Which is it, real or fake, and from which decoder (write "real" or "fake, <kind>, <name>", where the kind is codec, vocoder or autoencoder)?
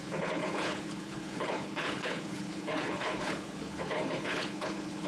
fake, codec, HILCodec